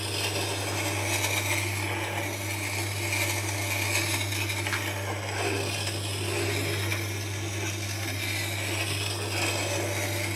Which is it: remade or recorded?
recorded